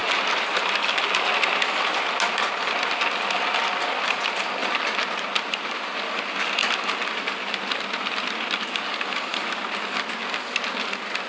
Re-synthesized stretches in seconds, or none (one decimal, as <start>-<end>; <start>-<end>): 4.6-6.0